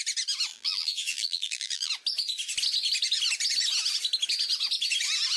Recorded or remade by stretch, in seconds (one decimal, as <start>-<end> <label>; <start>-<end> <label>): 0.0-0.5 recorded; 0.5-1.9 remade; 1.9-5.4 recorded